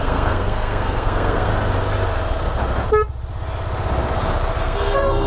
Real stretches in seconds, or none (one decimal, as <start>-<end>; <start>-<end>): 1.5-4.6